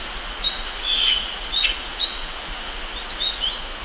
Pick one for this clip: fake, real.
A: fake